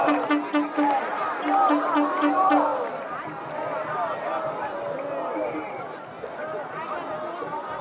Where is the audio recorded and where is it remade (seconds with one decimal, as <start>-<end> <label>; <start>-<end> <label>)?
0.0-7.8 recorded